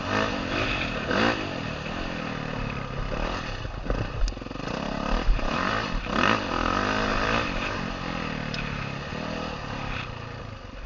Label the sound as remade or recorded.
recorded